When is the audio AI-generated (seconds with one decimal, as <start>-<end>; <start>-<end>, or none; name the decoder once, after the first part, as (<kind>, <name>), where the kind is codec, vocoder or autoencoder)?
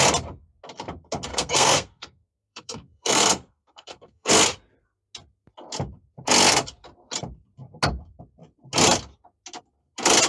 1.3-4.3 (codec, SNAC)